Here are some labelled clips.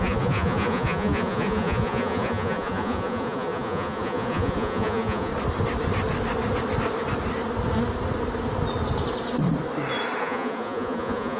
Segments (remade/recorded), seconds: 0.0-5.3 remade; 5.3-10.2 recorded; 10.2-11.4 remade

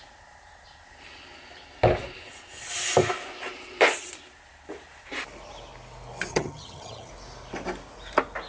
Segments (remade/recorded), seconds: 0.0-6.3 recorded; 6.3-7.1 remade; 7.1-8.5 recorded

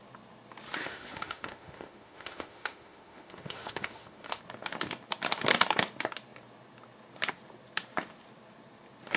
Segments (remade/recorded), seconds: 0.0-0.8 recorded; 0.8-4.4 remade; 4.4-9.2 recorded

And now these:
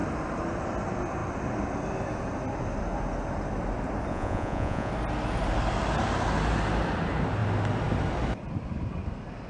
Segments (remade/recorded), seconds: 0.0-4.1 recorded; 4.1-4.9 remade; 4.9-9.5 recorded

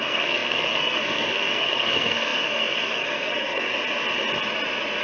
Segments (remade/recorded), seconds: 0.0-3.7 remade; 3.7-5.0 recorded